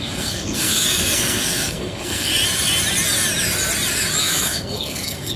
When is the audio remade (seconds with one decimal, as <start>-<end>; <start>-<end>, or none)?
0.0-2.3; 4.2-5.4